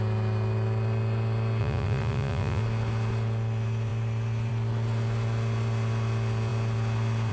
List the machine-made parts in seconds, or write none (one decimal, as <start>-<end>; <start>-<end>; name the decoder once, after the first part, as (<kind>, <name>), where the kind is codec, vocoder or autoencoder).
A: 1.6-2.6 (vocoder, Vocos)